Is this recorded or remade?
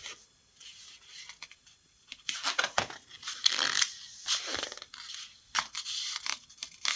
recorded